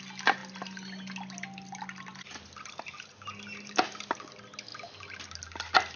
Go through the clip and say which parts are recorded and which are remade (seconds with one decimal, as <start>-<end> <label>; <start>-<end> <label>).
0.0-6.0 recorded